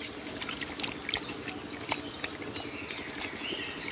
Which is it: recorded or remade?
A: recorded